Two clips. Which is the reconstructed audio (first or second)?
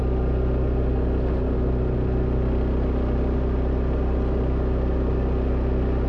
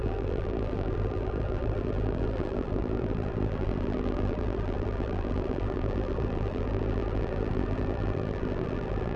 second